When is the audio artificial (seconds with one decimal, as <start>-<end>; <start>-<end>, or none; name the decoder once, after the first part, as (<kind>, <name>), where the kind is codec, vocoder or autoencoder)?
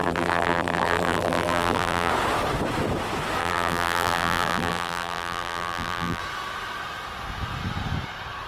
0.0-2.1 (vocoder, BigVGAN v2); 3.4-6.2